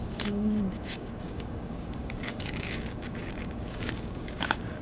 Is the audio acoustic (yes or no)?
no